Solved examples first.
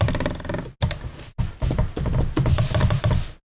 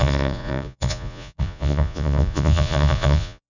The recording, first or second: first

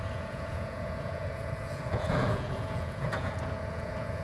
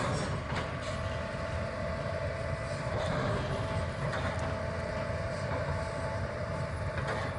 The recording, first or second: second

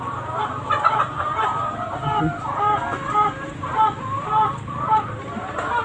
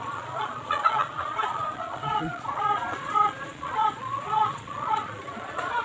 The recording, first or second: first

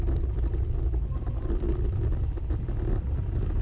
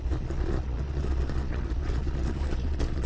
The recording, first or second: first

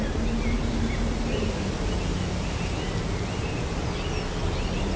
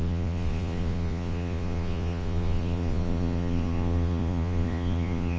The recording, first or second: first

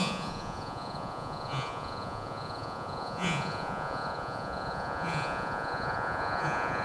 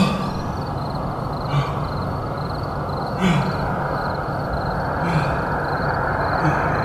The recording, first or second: second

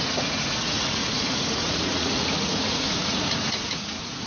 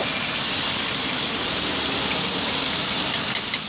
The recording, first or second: second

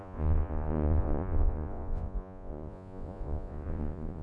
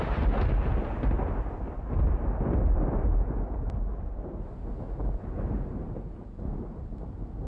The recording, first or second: second